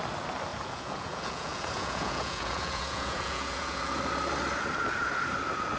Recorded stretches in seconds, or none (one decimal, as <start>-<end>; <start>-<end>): 0.0-0.5; 4.0-5.8